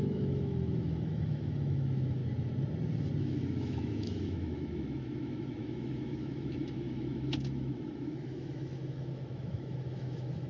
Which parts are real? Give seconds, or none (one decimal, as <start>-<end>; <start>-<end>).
2.2-3.2